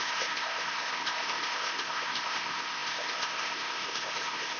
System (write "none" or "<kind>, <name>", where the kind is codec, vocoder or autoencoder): codec, ZipCodec